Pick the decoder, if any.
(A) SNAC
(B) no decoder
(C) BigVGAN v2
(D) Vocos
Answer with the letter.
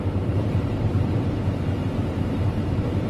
C